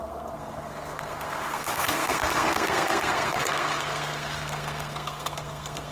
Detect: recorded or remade remade